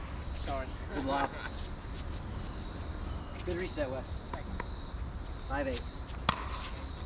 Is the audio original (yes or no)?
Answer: yes